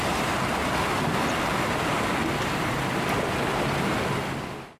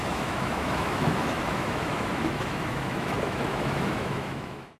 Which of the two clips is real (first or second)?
first